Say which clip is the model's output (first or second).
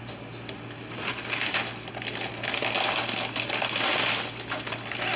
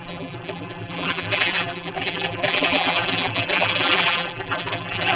second